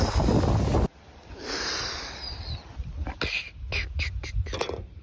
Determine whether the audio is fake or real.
real